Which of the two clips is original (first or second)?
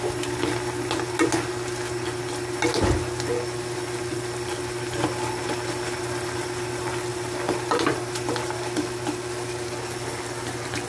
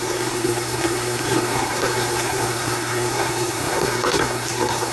first